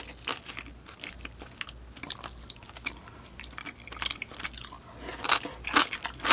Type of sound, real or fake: real